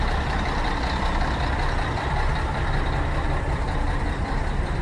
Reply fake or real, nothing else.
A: fake